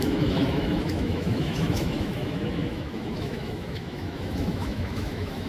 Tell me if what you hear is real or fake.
fake